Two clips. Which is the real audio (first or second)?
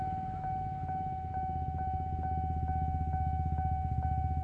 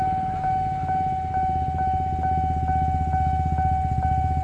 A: second